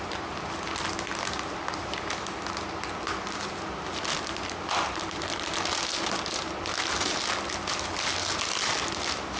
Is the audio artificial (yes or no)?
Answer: no